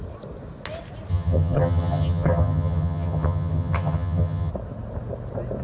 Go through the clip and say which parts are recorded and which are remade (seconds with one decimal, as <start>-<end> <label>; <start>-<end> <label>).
0.0-1.1 recorded; 1.1-4.5 remade; 4.5-5.6 recorded